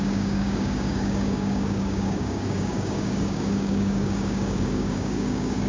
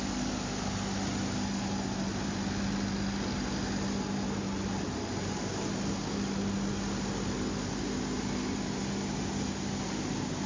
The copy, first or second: first